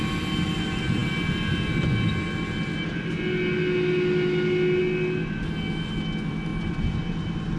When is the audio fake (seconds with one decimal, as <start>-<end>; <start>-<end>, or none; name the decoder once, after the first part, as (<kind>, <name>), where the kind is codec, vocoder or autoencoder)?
6.5-7.6 (vocoder, BigVGAN v2)